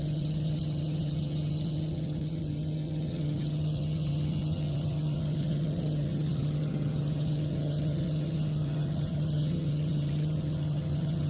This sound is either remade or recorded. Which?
remade